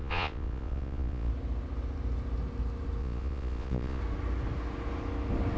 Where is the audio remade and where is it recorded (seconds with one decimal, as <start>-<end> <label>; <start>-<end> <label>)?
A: 0.0-1.3 remade; 1.3-3.0 recorded; 3.0-4.0 remade; 4.0-5.6 recorded